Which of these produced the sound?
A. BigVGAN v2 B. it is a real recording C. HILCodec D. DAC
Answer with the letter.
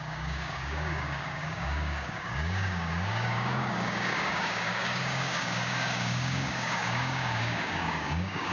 D